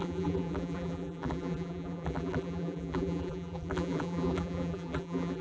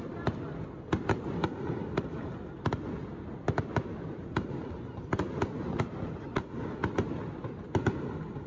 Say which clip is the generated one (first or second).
first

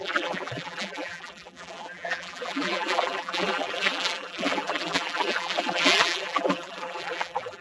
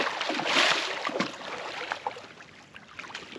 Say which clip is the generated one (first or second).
first